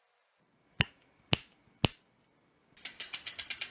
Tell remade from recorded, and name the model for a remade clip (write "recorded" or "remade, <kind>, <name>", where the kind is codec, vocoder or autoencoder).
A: recorded